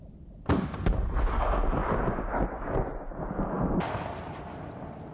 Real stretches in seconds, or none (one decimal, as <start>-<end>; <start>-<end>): 0.0-5.1